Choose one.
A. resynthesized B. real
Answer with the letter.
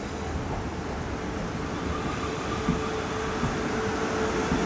B